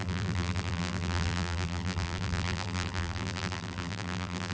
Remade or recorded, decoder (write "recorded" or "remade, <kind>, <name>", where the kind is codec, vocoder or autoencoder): remade, vocoder, BigVGAN v2